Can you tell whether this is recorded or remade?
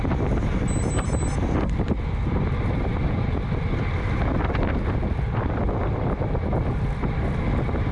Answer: recorded